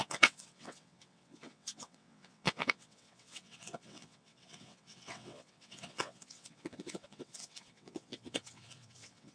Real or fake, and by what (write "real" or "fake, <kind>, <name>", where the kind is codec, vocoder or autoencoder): fake, vocoder, WaveNeXt